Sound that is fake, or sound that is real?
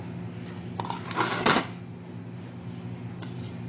real